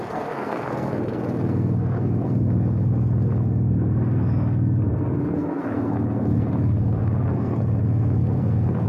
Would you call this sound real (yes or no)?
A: no